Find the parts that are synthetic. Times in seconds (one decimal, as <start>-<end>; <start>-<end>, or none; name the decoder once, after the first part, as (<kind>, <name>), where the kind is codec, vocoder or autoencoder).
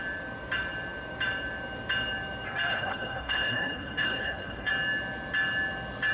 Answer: 2.7-4.7 (codec, HILCodec)